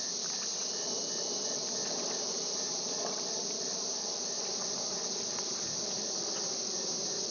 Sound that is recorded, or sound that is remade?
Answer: recorded